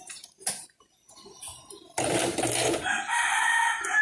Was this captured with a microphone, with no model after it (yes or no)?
yes